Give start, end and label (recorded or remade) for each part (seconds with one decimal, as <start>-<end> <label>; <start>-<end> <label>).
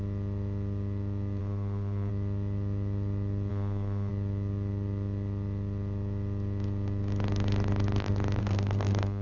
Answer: 0.0-1.4 recorded; 1.4-2.1 remade; 2.1-3.5 recorded; 3.5-4.1 remade; 4.1-8.4 recorded; 8.4-9.2 remade